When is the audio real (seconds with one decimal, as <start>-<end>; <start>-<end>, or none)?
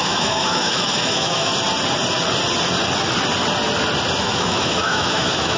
1.5-4.2